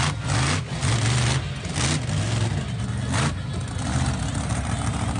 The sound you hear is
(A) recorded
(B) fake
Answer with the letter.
A